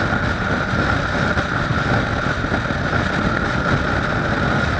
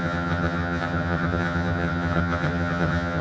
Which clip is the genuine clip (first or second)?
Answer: first